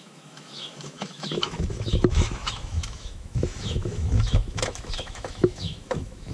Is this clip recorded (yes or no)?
no